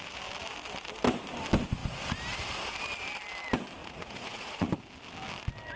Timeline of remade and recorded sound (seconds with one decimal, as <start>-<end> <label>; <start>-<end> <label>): 0.0-3.8 recorded; 3.8-4.7 remade; 4.7-5.8 recorded